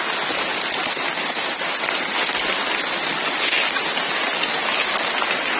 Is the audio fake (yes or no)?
no